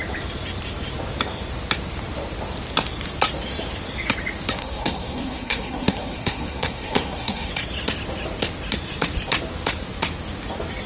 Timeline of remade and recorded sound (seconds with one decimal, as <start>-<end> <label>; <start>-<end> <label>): 0.0-4.6 recorded; 4.6-7.5 remade; 7.5-10.9 recorded